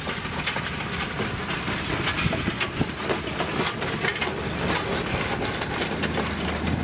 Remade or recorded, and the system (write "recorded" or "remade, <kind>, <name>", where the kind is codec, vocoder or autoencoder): recorded